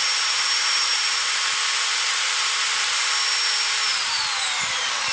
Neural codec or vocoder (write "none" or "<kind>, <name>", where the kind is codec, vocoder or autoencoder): vocoder, BigVGAN v2